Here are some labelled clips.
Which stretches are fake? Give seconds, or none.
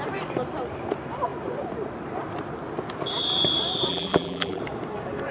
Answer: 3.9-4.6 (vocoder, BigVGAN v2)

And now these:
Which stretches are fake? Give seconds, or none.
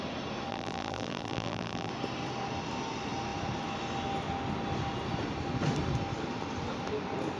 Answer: 0.5-1.9 (vocoder, BigVGAN v2)